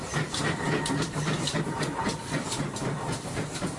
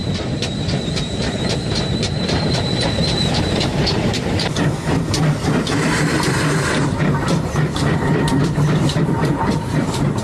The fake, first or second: second